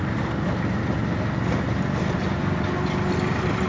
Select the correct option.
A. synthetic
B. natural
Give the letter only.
B